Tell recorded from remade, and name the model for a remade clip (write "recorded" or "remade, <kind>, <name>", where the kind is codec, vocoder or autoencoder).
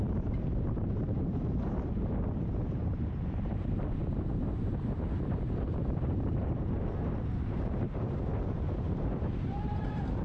remade, vocoder, BigVGAN v2